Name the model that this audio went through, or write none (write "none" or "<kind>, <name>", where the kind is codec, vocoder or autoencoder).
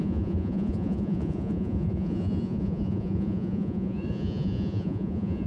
vocoder, Vocos